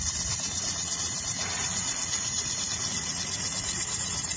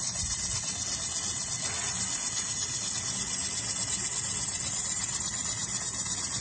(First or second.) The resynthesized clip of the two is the first